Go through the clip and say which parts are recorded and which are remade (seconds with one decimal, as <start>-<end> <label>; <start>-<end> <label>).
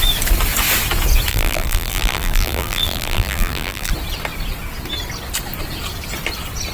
0.0-1.3 recorded; 1.3-3.9 remade; 3.9-6.7 recorded